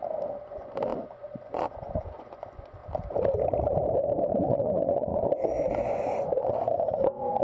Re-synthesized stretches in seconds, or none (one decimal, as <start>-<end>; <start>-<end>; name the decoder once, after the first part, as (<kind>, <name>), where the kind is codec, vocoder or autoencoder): 0.5-2.8 (vocoder, Vocos); 4.3-7.4